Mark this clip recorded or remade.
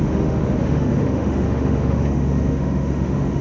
remade